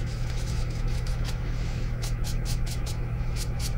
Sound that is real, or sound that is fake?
fake